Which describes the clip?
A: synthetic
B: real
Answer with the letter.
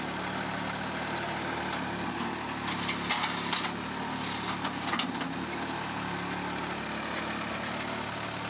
B